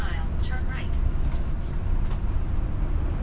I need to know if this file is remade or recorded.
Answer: recorded